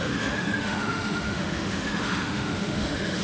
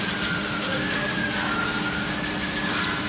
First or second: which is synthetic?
first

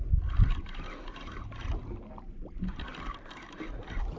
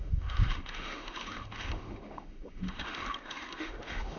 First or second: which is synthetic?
second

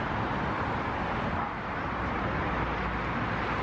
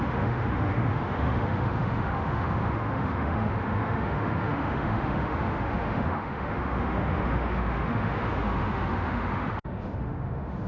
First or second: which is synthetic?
second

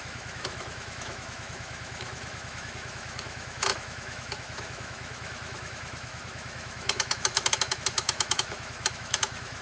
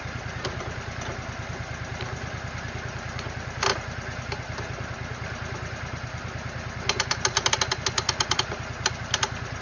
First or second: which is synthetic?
first